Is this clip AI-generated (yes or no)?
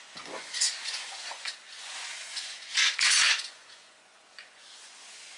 yes